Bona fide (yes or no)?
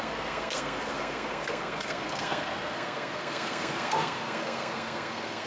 no